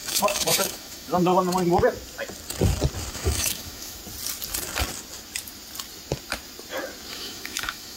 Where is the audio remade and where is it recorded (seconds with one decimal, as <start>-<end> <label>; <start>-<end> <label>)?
0.0-1.3 remade; 1.3-3.1 recorded; 3.1-4.0 remade; 4.0-7.1 recorded; 7.1-8.0 remade